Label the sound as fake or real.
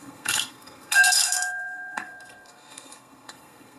fake